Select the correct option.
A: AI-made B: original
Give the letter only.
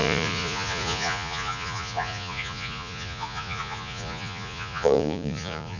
A